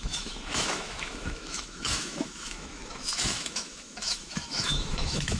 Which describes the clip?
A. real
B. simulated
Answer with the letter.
B